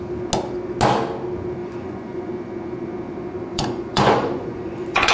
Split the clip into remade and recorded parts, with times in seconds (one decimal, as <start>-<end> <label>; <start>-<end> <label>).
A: 0.0-1.6 recorded; 1.6-2.3 remade; 2.3-3.5 recorded; 3.5-5.1 remade